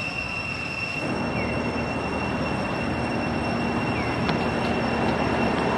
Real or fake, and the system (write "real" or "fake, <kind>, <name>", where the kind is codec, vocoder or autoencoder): real